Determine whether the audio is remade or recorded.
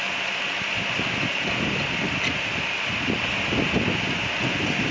recorded